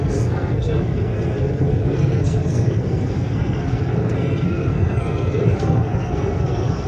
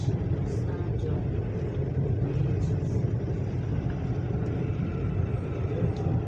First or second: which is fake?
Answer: first